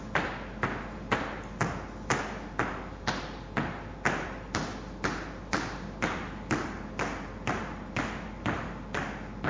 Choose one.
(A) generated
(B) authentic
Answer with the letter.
B